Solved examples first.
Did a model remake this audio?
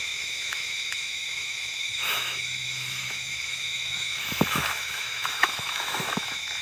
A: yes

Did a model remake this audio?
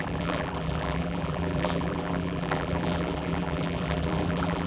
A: yes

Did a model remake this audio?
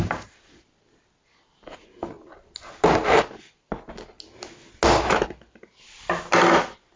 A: no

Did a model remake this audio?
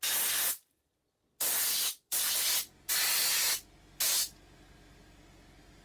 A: no